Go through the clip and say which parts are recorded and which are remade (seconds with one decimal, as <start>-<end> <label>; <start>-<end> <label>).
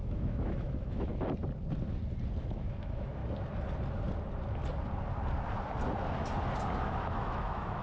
0.0-1.1 remade; 1.1-2.4 recorded; 2.4-3.2 remade; 3.2-6.8 recorded; 6.8-7.8 remade